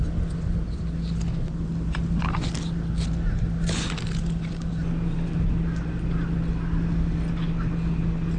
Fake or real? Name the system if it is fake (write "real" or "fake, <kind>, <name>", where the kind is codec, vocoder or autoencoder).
real